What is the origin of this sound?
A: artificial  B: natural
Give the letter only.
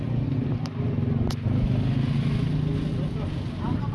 B